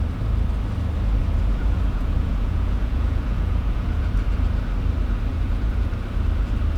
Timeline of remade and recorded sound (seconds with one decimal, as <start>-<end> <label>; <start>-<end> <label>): 0.0-1.2 recorded; 1.2-4.1 remade; 4.1-5.3 recorded; 5.3-5.9 remade; 5.9-6.8 recorded